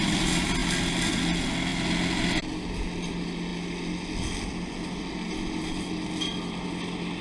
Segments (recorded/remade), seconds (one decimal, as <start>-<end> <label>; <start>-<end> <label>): 0.0-7.2 recorded